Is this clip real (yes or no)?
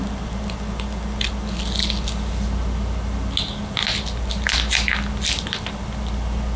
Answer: yes